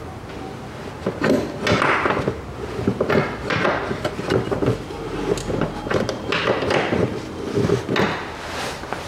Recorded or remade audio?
recorded